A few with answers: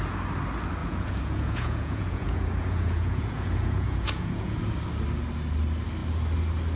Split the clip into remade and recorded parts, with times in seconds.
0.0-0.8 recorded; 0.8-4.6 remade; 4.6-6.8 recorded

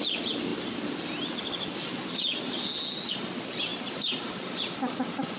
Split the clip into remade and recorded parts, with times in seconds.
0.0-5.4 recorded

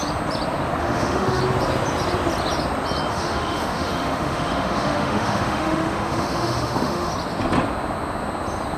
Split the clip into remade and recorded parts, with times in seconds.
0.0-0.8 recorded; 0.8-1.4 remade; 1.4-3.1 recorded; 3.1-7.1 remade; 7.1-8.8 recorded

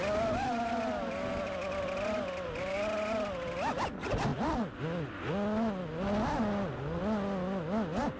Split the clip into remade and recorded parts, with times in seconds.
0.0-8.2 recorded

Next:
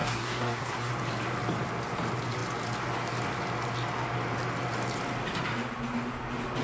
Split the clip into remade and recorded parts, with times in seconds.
0.0-0.9 remade; 0.9-6.6 recorded